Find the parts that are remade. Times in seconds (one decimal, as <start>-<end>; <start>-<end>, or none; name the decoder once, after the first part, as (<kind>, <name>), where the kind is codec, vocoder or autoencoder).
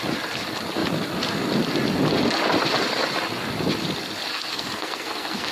4.3-5.5 (codec, SNAC)